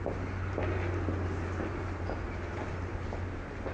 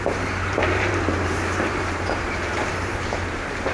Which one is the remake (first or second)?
second